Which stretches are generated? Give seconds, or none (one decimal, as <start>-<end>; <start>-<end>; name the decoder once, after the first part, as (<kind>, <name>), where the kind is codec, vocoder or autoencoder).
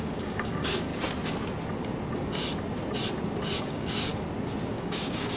0.0-0.9 (codec, DAC); 3.6-4.1; 4.7-5.4